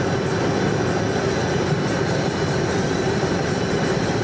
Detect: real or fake real